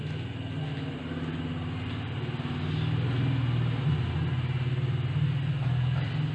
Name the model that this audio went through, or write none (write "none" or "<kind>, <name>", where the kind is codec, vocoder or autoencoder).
none